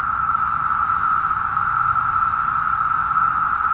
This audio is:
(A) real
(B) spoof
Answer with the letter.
A